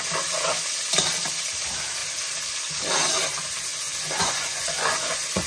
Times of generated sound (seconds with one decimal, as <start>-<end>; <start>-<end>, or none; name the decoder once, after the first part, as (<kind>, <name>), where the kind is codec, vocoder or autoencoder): 3.7-5.5 (vocoder, Vocos)